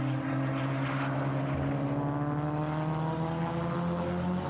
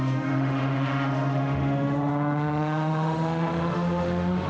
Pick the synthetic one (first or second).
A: second